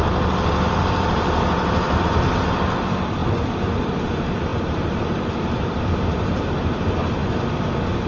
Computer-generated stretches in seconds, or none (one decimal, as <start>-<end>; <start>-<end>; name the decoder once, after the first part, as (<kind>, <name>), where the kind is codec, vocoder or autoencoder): 4.5-6.3 (vocoder, BigVGAN v2)